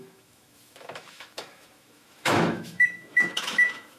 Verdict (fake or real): fake